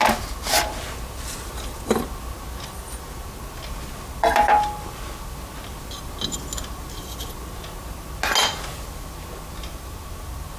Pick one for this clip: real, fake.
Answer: real